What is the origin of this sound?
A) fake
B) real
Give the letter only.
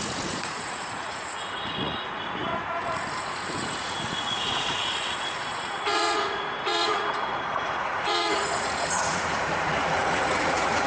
A